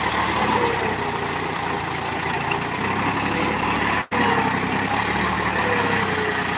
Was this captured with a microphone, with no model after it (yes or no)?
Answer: yes